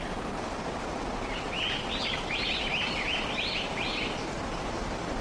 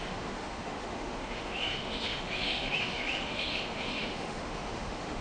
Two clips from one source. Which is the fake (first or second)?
second